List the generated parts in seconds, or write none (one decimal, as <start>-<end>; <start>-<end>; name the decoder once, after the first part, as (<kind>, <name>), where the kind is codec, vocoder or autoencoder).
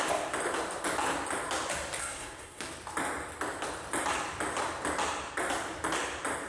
2.0-2.6 (codec, SNAC)